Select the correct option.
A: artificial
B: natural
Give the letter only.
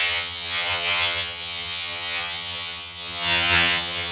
A